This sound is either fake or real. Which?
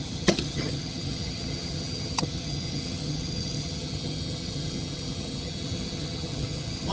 fake